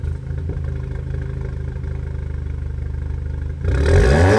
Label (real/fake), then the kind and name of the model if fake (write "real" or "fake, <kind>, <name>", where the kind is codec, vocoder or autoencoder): real